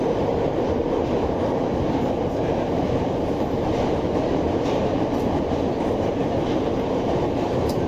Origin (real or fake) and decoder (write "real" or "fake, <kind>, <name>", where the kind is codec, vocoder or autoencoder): fake, vocoder, BigVGAN v2